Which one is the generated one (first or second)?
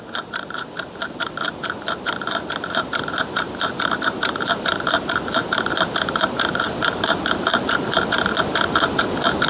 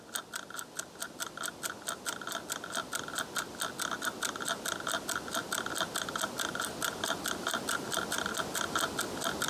first